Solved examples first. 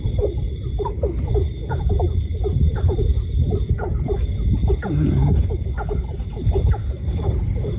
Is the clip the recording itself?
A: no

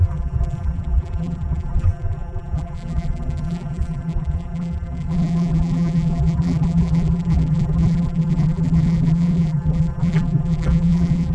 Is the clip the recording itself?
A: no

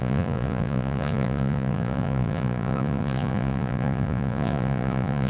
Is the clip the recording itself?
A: no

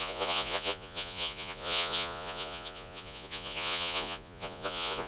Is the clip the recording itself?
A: no